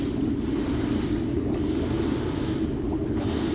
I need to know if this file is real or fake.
real